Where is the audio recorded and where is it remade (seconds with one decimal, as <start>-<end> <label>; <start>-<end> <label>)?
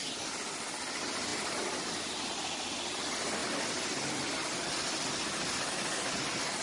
0.0-6.6 recorded